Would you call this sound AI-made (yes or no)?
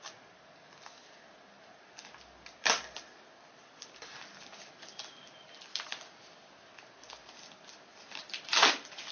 no